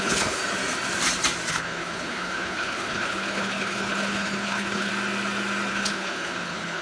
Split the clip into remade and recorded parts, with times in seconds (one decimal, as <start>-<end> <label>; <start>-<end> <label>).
0.0-0.4 remade; 0.4-1.5 recorded; 1.5-4.9 remade; 4.9-5.7 recorded; 5.7-6.8 remade